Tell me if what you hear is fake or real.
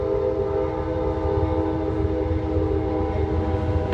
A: real